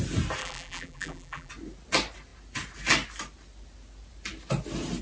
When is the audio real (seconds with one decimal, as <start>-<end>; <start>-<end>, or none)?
0.0-0.4; 1.5-5.0